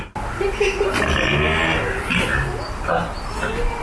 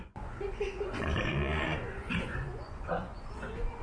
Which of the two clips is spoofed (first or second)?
second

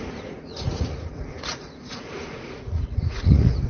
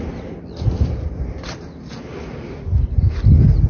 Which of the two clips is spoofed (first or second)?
first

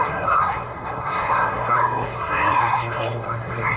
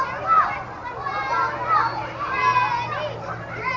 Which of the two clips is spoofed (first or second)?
first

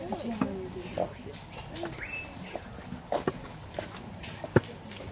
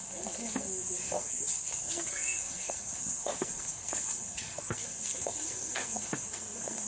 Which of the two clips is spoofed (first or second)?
second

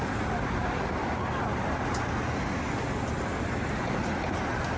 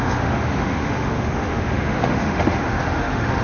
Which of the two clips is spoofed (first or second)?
second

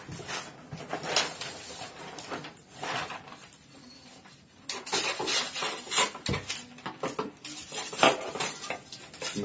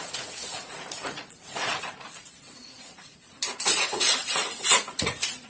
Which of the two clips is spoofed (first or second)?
second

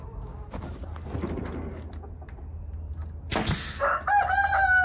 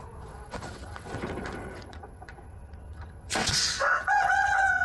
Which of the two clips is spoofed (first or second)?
second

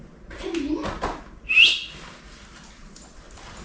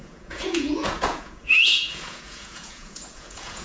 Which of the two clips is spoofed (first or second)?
second